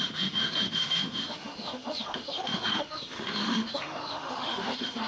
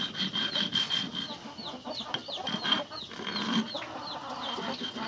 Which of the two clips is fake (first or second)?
first